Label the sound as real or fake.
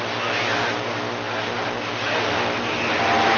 real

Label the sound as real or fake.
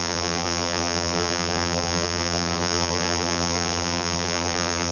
fake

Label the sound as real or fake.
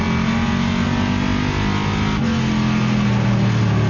real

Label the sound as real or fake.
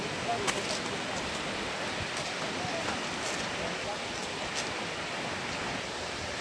real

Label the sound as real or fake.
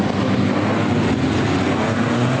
real